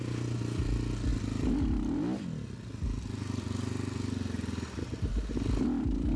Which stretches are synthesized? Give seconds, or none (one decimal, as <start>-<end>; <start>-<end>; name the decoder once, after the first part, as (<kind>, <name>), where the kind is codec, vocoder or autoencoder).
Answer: none